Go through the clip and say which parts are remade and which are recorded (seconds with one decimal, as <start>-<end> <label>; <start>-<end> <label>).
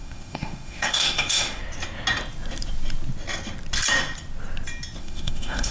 0.0-1.6 remade; 1.6-5.0 recorded; 5.0-5.7 remade